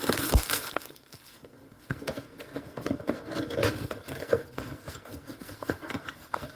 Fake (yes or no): yes